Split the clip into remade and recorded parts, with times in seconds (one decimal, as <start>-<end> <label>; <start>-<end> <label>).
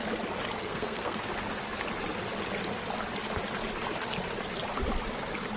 0.0-0.6 recorded; 0.6-1.2 remade; 1.2-5.6 recorded